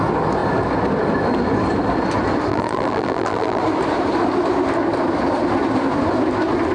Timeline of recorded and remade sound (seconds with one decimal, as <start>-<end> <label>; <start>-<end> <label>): 0.0-2.5 recorded; 2.5-3.6 remade; 3.6-6.7 recorded